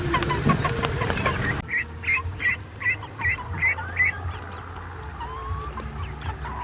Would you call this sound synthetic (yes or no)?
no